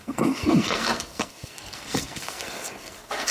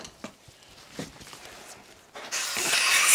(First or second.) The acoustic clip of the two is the second